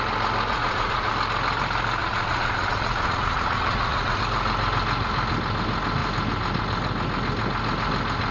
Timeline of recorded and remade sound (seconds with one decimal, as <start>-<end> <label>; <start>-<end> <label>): 0.0-0.5 recorded; 0.5-1.1 remade; 1.1-2.0 recorded; 2.0-4.2 remade; 4.2-8.3 recorded